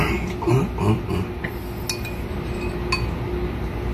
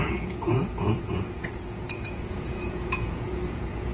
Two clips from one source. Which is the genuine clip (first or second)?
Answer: first